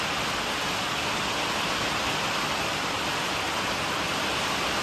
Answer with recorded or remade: recorded